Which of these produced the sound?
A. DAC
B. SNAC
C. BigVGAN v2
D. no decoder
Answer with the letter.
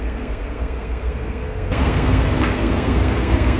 B